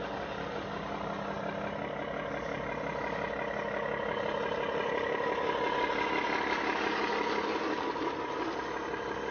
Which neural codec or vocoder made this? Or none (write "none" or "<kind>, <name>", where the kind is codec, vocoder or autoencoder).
none